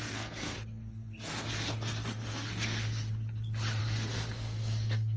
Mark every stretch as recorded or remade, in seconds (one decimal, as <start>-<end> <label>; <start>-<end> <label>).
0.0-3.1 remade; 3.1-3.8 recorded; 3.8-5.2 remade